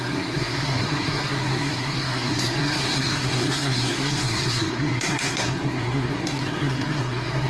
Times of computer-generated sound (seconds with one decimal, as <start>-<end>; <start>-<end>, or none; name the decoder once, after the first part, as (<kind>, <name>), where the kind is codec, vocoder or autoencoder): 0.0-7.5 (codec, SNAC)